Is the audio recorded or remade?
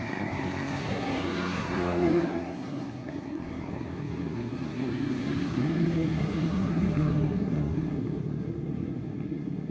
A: remade